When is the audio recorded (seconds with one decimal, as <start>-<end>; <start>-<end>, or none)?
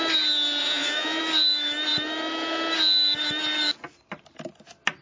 0.0-0.6; 1.2-5.0